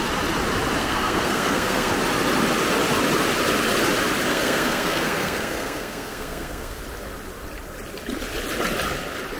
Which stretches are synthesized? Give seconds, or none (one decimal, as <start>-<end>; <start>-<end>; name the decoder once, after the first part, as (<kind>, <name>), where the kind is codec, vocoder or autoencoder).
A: 0.8-1.9 (codec, SNAC); 4.3-6.8